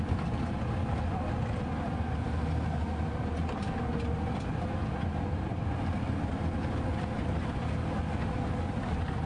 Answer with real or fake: real